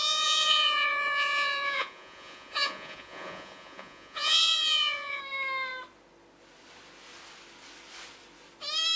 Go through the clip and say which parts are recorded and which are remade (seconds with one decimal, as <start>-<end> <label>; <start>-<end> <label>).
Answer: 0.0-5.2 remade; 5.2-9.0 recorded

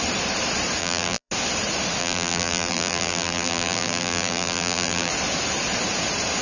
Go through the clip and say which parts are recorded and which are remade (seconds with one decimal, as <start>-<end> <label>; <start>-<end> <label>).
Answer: 0.0-0.8 recorded; 0.8-1.3 remade; 1.3-2.0 recorded; 2.0-5.1 remade; 5.1-6.4 recorded

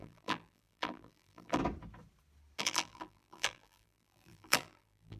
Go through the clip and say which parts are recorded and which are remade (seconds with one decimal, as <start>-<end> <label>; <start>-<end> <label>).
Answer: 0.0-1.6 remade; 1.6-2.6 recorded; 2.6-5.2 remade

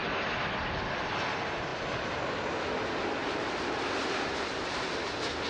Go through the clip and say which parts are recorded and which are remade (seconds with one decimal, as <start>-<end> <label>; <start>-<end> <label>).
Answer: 0.0-3.2 recorded; 3.2-5.0 remade; 5.0-5.5 recorded